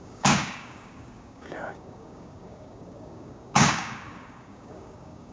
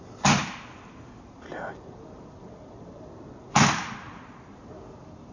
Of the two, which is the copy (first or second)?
first